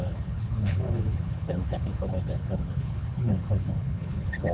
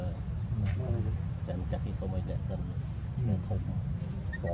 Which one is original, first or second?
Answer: second